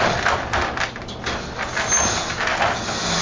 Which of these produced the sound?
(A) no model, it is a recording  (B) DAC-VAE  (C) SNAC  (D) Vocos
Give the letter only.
A